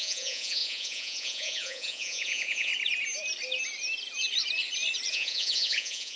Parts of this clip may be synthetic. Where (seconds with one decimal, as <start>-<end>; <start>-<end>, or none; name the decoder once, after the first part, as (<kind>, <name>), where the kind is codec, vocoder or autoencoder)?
0.0-2.7 (vocoder, Vocos); 5.1-6.2